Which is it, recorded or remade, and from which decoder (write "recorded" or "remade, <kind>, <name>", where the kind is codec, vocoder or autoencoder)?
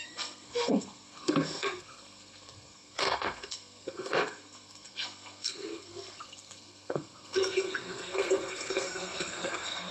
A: remade, codec, SNAC